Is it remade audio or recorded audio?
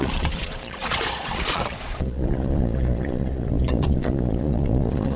remade